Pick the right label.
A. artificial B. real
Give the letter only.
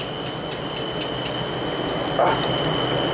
B